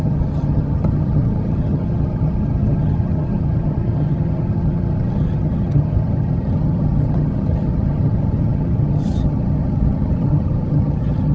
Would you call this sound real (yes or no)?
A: no